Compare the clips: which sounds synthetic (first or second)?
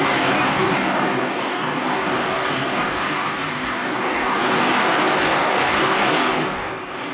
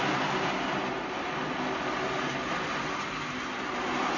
first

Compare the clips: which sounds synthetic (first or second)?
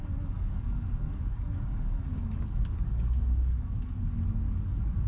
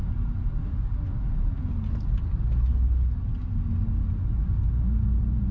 first